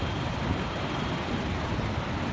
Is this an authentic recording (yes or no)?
yes